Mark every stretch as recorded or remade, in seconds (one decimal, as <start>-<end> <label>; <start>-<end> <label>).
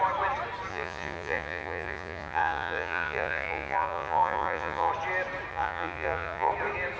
0.0-0.7 recorded; 0.7-4.9 remade; 4.9-5.5 recorded; 5.5-6.5 remade; 6.5-7.0 recorded